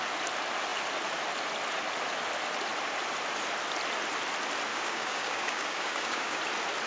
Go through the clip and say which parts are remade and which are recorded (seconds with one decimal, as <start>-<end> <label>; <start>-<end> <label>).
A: 0.0-4.7 recorded; 4.7-6.4 remade; 6.4-6.9 recorded

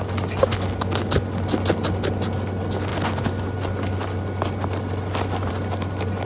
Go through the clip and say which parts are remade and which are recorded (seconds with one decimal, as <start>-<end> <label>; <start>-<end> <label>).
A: 0.0-6.3 recorded

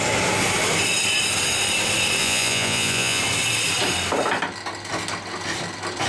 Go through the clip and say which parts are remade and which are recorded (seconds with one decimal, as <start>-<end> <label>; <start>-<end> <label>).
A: 0.0-2.2 recorded; 2.2-3.2 remade; 3.2-6.1 recorded

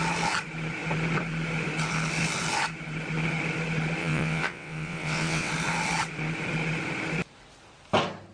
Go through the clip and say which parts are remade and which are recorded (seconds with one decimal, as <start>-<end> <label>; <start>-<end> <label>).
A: 0.0-4.0 recorded; 4.0-5.5 remade; 5.5-8.3 recorded

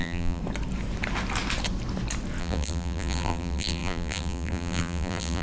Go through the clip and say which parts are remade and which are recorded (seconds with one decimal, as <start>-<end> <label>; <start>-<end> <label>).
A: 0.0-0.4 remade; 0.4-2.4 recorded; 2.4-5.4 remade

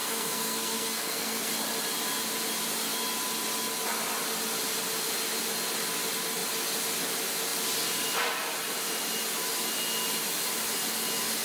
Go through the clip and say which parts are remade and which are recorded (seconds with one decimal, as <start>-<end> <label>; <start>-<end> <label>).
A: 0.0-1.5 remade; 1.5-11.4 recorded

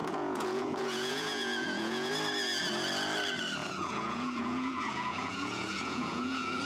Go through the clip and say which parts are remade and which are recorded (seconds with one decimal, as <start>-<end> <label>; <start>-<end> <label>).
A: 0.0-2.1 remade; 2.1-3.6 recorded; 3.6-6.6 remade